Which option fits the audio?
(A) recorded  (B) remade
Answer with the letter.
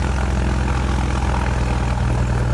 A